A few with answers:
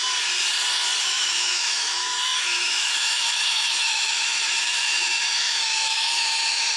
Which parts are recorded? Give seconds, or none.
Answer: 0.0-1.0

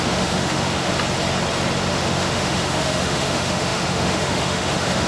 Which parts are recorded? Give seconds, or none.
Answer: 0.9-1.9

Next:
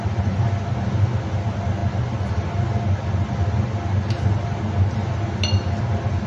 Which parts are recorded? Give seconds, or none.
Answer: 0.0-6.3